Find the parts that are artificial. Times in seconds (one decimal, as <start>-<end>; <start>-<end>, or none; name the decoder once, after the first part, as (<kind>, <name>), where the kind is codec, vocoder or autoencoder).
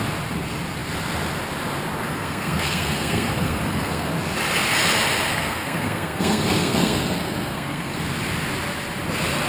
2.1-4.1 (codec, SNAC); 5.3-8.0